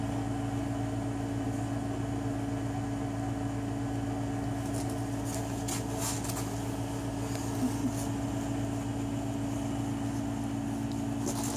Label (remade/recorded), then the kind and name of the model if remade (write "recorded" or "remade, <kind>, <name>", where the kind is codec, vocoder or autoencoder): recorded